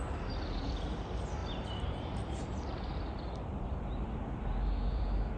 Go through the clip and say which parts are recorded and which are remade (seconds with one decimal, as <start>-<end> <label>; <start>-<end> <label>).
0.0-1.4 recorded; 1.4-4.6 remade; 4.6-5.4 recorded